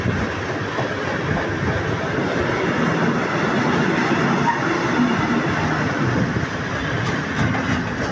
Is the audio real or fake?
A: real